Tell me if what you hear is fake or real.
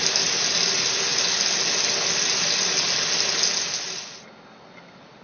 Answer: real